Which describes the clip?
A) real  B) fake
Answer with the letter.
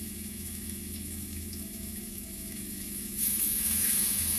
B